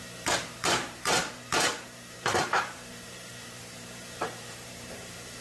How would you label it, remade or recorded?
remade